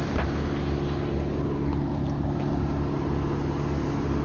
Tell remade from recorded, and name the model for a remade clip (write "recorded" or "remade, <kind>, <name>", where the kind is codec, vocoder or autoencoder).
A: recorded